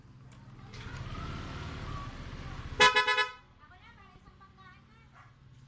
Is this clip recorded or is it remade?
recorded